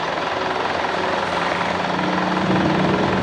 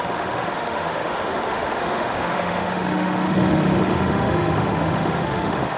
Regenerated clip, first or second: second